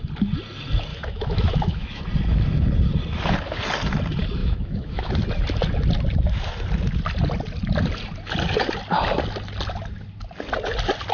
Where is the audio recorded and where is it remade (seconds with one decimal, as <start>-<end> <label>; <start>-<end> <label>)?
0.0-0.9 recorded; 0.9-2.0 remade; 2.0-4.4 recorded; 4.4-5.1 remade; 5.1-11.1 recorded